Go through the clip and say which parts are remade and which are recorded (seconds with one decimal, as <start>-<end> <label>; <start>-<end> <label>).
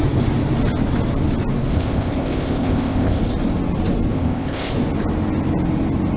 0.0-1.7 recorded; 1.7-3.2 remade; 3.2-4.1 recorded; 4.1-4.7 remade; 4.7-6.2 recorded